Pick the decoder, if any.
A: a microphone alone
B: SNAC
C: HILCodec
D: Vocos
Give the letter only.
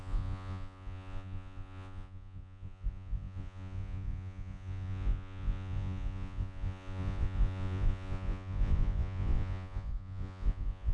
D